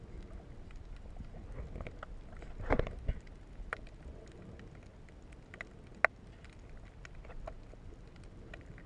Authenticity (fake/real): real